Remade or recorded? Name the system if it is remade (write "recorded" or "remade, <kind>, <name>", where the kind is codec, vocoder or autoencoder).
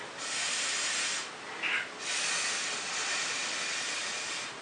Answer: recorded